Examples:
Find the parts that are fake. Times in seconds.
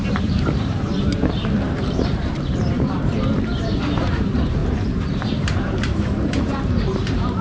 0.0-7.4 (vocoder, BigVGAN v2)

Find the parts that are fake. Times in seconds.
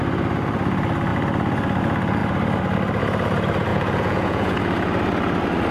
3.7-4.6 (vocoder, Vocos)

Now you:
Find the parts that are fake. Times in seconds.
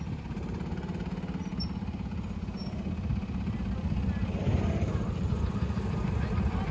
none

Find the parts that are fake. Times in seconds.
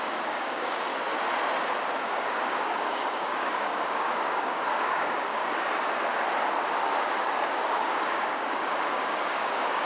0.0-0.9 (codec, DAC); 2.1-5.4; 7.2-9.8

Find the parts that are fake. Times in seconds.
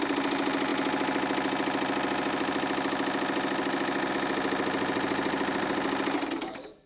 none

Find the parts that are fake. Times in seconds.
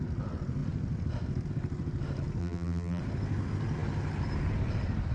2.4-3.0 (vocoder, BigVGAN v2)